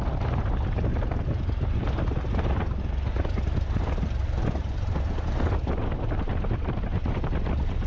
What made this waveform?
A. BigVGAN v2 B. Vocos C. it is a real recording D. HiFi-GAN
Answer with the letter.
C